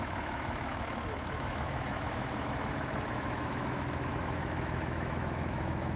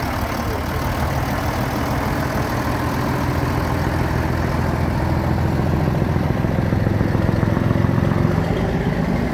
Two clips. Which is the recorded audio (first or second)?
second